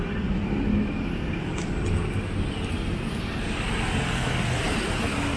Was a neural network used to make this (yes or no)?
no